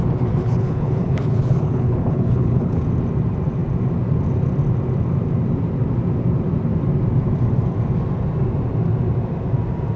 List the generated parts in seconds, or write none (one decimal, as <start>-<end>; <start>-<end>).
0.4-2.8